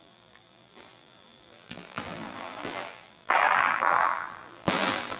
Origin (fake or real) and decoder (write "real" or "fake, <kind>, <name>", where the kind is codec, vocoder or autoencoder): fake, vocoder, BigVGAN v2